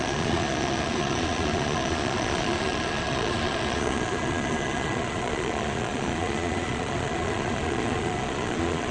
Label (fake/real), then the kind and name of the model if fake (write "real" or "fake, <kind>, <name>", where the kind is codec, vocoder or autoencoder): fake, vocoder, Vocos